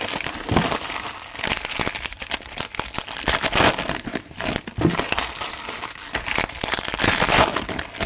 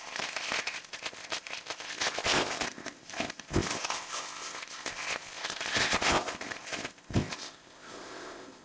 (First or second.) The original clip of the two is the first